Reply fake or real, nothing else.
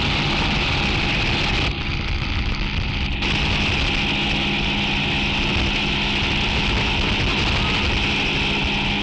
real